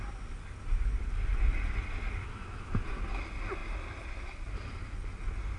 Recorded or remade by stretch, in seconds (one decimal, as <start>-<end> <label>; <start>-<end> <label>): 0.0-2.2 recorded; 2.2-2.8 remade; 2.8-5.6 recorded